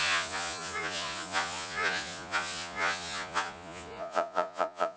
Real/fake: fake